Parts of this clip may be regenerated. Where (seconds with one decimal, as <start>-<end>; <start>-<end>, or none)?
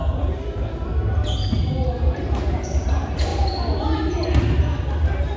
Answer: none